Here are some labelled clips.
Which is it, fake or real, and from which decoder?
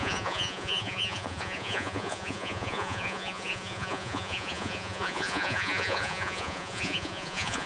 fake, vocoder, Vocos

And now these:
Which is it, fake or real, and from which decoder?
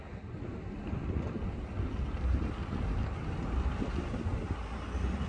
real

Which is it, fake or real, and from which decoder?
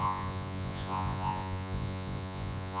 fake, vocoder, Vocos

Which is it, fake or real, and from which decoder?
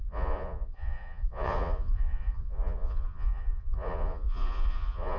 fake, vocoder, Vocos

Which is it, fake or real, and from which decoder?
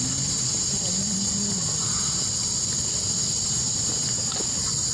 real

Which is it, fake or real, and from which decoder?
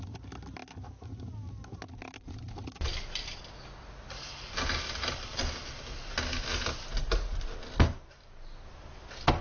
real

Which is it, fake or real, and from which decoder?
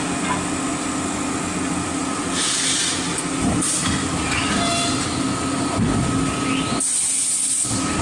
real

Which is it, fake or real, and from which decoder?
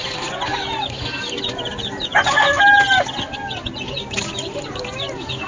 real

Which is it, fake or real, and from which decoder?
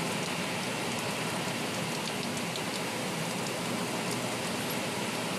real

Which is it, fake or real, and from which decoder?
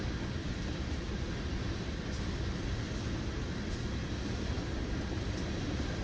real